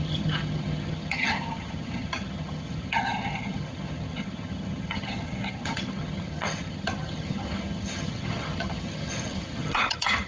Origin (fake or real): fake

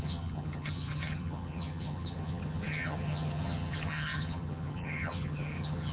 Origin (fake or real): fake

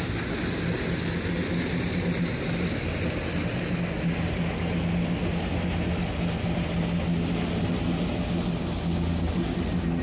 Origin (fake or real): real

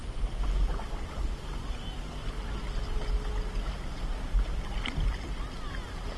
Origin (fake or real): real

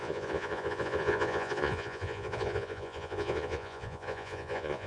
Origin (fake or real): fake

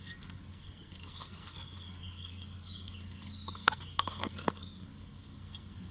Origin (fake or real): fake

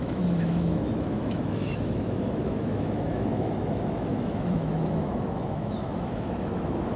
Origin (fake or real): fake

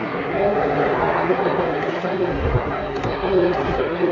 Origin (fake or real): fake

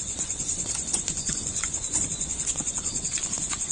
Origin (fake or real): fake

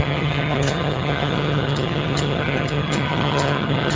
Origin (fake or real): fake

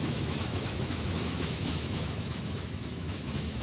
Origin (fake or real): fake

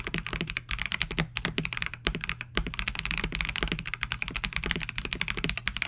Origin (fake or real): real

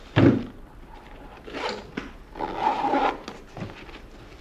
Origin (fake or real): real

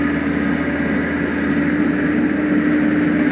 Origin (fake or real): real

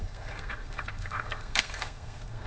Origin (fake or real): fake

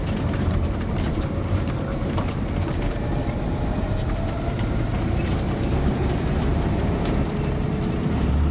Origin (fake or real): fake